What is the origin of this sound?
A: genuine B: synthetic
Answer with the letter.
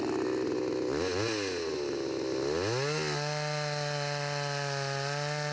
A